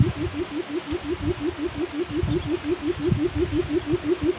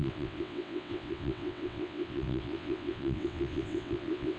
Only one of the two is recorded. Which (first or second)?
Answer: first